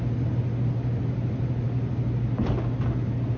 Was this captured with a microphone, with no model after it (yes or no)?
yes